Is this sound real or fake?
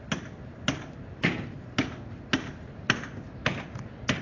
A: real